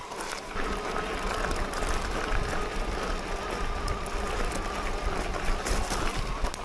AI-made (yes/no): no